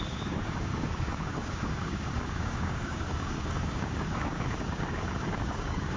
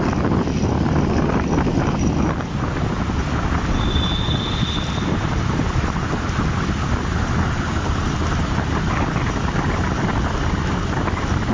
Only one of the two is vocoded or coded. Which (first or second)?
first